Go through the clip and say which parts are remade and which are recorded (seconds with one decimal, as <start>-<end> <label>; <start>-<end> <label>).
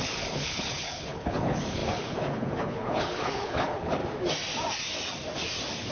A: 0.0-4.0 remade; 4.0-5.9 recorded